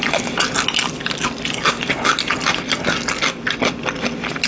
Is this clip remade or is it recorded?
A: recorded